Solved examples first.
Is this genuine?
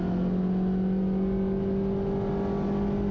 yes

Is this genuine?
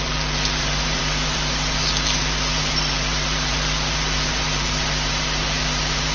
no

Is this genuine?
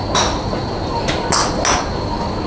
yes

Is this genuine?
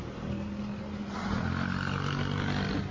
yes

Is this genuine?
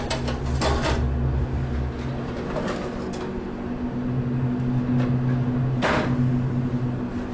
yes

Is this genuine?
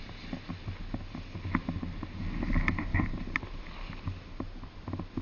yes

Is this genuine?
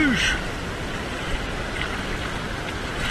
yes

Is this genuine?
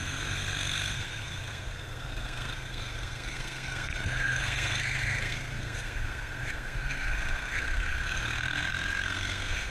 no